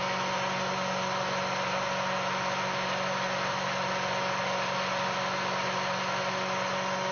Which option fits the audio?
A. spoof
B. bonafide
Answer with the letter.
B